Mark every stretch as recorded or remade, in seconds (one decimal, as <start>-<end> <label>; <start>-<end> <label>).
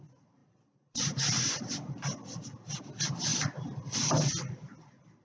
0.0-3.3 recorded; 3.3-4.8 remade; 4.8-5.2 recorded